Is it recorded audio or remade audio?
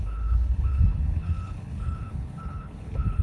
remade